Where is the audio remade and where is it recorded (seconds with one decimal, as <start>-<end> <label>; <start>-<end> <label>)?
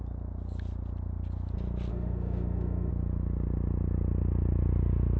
0.0-1.9 recorded; 1.9-2.9 remade; 2.9-5.2 recorded